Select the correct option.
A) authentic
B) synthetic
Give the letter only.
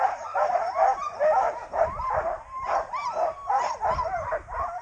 B